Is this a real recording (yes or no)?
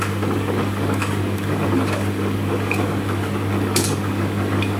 no